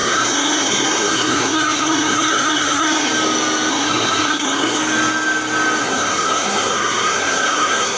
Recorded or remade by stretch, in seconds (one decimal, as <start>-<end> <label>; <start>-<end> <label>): 0.0-3.1 remade; 3.1-3.7 recorded; 3.7-4.8 remade; 4.8-5.8 recorded; 5.8-8.0 remade

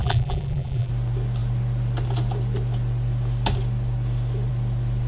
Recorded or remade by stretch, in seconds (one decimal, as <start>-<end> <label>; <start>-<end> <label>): 0.0-0.9 remade; 0.9-5.1 recorded

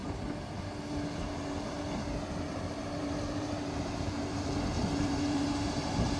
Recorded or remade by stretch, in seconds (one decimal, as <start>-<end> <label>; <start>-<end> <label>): 0.0-2.5 recorded; 2.5-6.2 remade

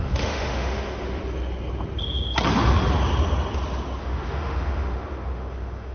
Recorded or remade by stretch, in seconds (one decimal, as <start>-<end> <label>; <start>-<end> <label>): 0.0-1.2 remade; 1.2-4.0 recorded; 4.0-5.9 remade

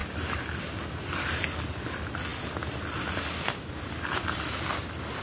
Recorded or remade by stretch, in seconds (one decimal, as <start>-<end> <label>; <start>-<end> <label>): 0.0-5.2 recorded